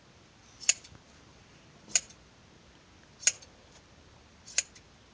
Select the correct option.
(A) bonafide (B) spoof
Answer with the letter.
A